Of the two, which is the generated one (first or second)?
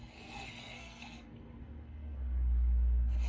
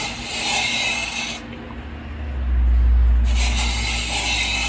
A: first